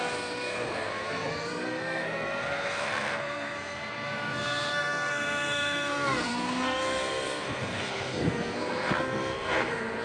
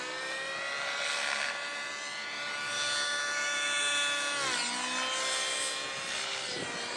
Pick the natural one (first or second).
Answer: second